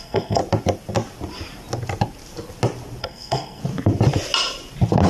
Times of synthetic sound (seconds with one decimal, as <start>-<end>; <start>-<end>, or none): 0.0-0.4; 3.0-3.6